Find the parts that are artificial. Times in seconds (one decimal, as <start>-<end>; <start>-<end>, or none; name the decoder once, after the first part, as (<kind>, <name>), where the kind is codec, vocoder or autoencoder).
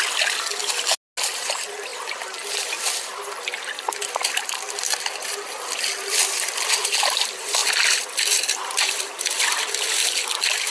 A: none